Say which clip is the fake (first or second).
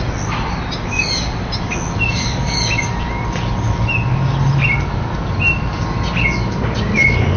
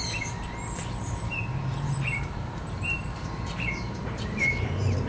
second